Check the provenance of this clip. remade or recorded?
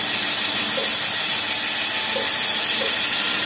recorded